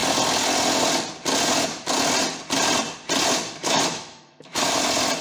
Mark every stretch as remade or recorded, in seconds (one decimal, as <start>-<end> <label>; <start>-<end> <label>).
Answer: 0.0-3.6 recorded; 3.6-4.7 remade; 4.7-5.2 recorded